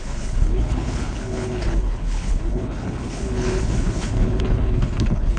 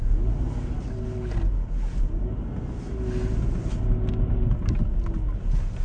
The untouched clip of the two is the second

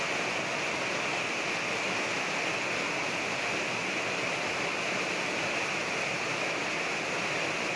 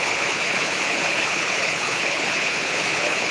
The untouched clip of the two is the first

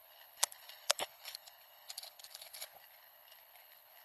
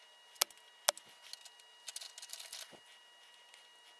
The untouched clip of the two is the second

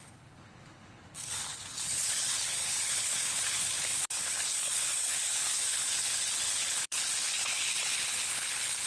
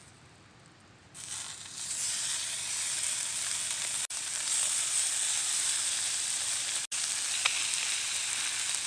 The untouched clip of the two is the second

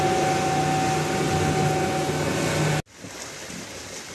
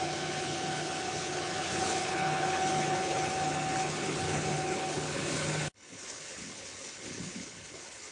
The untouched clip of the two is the first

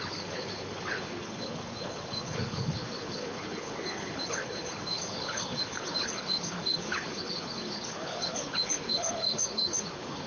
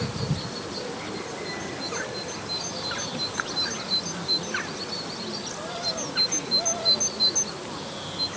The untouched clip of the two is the second